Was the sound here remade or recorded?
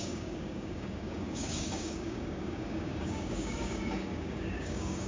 remade